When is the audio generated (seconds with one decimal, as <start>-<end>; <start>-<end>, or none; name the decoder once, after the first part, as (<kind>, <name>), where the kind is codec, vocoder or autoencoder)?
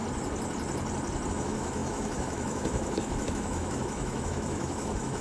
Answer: 1.3-5.2 (autoencoder, DAC-VAE)